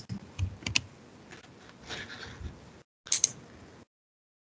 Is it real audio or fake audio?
real